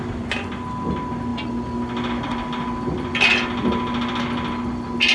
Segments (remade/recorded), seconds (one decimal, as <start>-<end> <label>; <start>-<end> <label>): 0.0-5.1 recorded